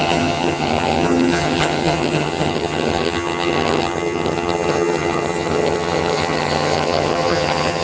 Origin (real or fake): fake